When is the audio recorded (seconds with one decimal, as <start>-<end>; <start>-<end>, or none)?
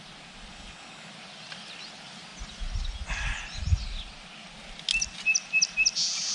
0.0-0.5; 1.1-6.3